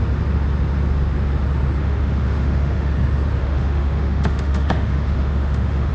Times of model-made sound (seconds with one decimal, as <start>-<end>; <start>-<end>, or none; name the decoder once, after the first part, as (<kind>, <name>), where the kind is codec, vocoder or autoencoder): 1.8-2.9 (autoencoder, DAC-VAE); 3.4-5.9